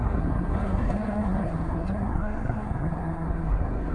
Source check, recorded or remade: remade